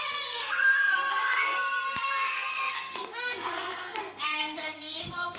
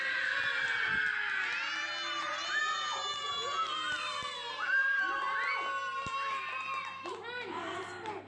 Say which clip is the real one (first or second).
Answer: second